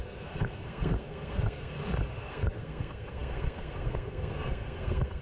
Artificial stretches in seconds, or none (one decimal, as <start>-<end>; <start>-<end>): 0.0-1.7; 2.2-5.2